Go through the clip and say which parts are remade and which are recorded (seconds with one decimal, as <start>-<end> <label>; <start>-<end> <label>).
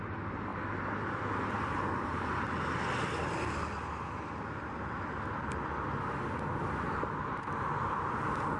0.0-8.6 recorded